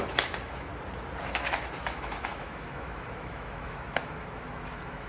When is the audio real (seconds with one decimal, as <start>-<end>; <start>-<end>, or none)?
0.7-1.2